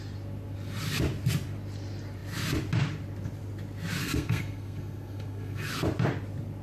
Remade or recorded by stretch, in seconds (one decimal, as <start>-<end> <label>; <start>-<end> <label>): 0.0-4.0 recorded; 4.0-5.7 remade; 5.7-6.6 recorded

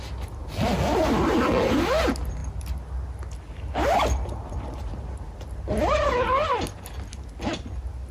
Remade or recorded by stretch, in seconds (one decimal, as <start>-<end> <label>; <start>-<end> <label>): 0.0-8.1 recorded